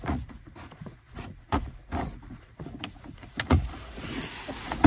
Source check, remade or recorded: remade